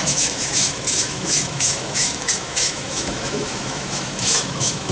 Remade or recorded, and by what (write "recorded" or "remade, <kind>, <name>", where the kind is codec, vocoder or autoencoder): remade, autoencoder, DAC-VAE